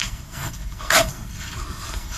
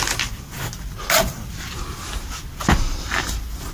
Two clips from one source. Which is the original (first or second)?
second